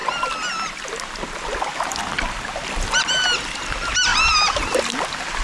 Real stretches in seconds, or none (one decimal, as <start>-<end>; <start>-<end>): 0.0-4.1; 4.8-5.4